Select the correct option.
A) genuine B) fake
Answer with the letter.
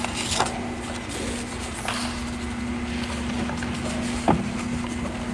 A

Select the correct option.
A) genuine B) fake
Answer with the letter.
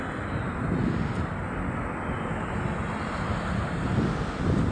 A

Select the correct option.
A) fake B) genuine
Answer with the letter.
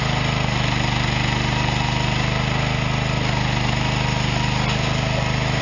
B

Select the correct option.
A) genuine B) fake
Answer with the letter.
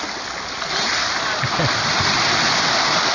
A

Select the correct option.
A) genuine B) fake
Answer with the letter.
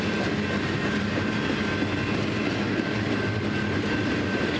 A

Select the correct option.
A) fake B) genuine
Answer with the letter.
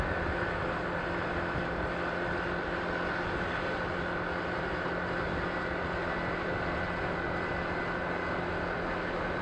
B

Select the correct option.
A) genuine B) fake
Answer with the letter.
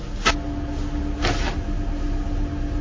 A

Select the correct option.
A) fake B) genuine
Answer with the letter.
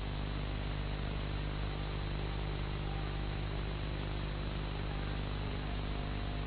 B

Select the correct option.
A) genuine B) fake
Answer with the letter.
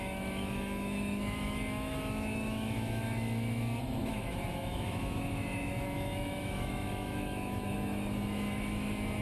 B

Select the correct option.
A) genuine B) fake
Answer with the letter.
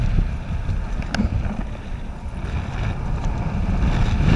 A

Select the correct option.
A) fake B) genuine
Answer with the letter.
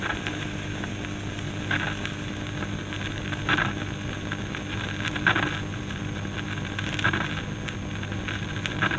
B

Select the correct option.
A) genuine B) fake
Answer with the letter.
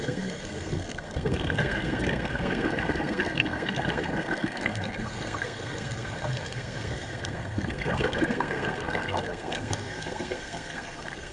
B